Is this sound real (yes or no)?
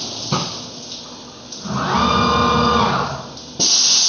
yes